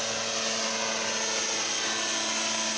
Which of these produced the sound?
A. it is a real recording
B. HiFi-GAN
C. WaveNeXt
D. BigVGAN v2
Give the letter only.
A